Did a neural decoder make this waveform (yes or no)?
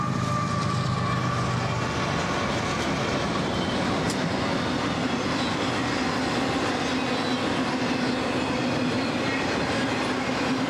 no